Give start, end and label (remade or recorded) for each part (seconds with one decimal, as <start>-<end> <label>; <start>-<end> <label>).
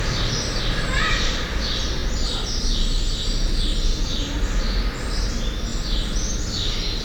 0.0-7.0 recorded